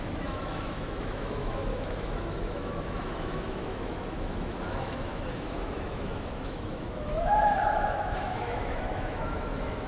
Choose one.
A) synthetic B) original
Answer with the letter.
A